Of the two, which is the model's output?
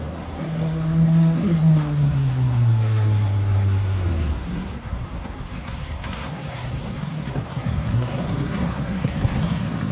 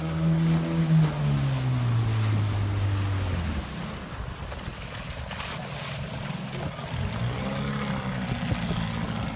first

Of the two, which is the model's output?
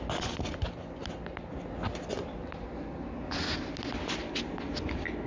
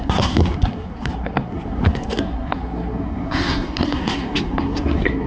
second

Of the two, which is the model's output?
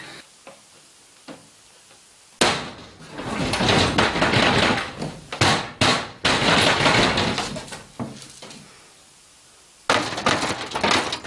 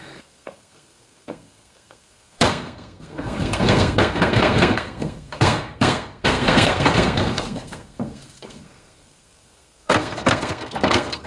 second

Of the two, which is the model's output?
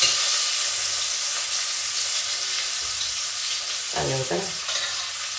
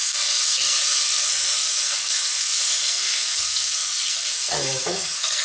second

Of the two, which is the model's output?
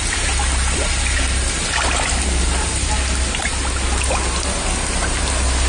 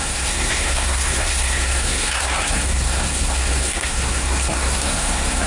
second